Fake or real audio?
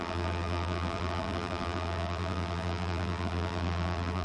fake